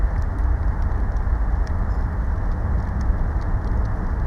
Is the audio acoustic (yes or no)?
yes